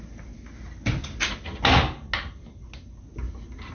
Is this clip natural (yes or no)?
yes